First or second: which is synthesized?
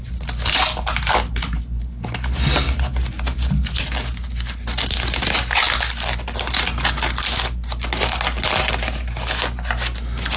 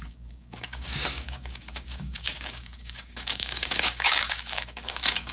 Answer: second